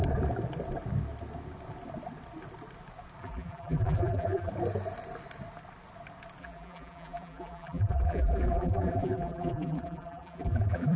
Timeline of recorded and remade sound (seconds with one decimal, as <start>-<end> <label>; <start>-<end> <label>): 0.0-3.2 recorded; 3.2-4.5 remade; 4.5-6.4 recorded; 6.4-11.0 remade